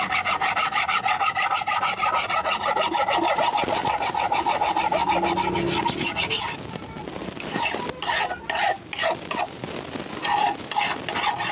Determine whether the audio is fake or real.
real